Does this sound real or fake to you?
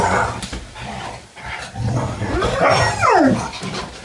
real